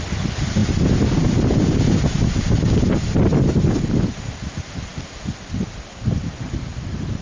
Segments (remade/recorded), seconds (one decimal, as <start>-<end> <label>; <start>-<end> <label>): 0.0-0.6 recorded; 0.6-3.5 remade; 3.5-7.2 recorded